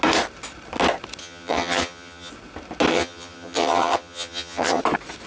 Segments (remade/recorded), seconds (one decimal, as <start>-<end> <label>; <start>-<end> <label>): 0.0-1.2 recorded; 1.2-2.3 remade; 2.3-2.9 recorded; 2.9-4.8 remade; 4.8-5.3 recorded